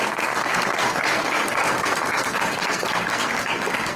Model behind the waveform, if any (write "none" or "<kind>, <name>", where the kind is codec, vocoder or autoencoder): codec, SNAC